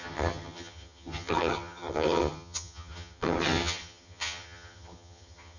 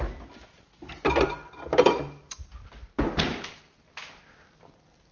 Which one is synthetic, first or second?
first